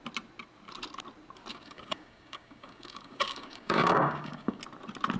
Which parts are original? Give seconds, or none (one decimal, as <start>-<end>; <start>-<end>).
0.0-1.5; 4.6-5.2